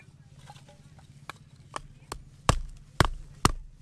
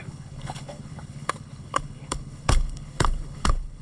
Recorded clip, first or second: first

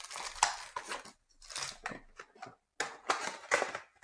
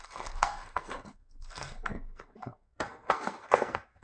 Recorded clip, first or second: first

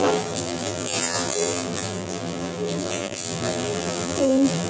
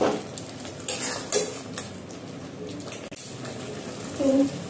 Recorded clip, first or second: second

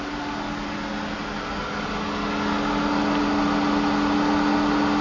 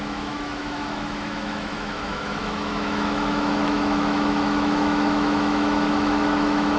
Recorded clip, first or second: first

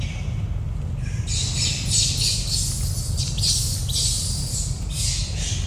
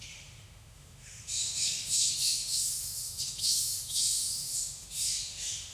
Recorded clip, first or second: first